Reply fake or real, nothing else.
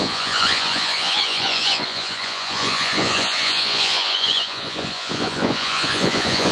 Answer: fake